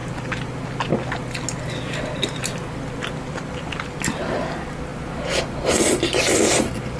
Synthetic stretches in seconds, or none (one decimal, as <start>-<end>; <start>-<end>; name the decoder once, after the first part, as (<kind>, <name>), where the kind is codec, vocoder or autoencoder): none